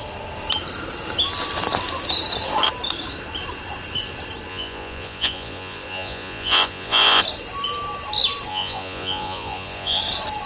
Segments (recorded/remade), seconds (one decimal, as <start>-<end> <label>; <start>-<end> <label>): 0.0-4.5 recorded; 4.5-7.2 remade; 7.2-8.5 recorded; 8.5-10.0 remade; 10.0-10.5 recorded